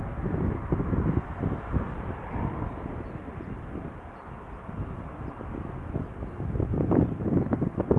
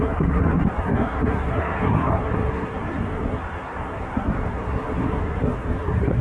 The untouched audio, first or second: first